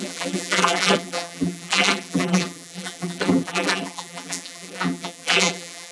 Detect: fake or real fake